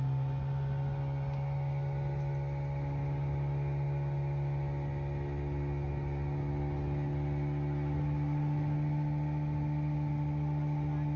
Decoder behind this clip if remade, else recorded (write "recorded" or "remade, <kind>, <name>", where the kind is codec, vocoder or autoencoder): recorded